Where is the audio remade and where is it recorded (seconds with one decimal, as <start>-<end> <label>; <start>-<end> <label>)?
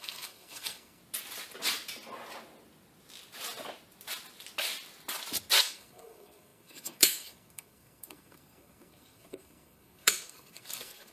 0.0-1.0 remade; 1.0-5.6 recorded; 5.6-11.1 remade